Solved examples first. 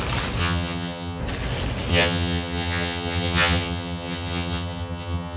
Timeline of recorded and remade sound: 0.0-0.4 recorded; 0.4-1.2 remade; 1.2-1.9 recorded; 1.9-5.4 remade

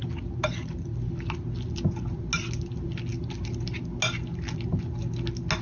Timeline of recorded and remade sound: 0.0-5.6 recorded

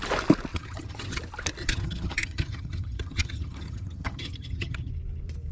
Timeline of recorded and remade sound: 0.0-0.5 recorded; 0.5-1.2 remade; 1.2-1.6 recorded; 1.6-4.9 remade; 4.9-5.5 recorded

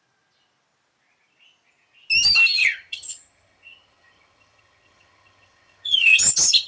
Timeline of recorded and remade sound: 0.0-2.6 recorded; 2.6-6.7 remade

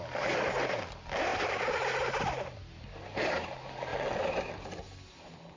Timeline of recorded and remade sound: 0.0-5.6 recorded

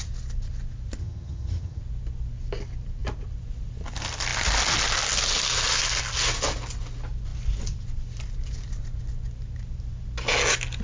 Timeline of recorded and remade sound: 0.0-1.0 recorded; 1.0-1.8 remade; 1.8-10.8 recorded

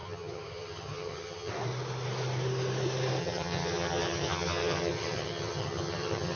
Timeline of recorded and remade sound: 0.0-1.5 remade; 1.5-3.2 recorded; 3.2-6.4 remade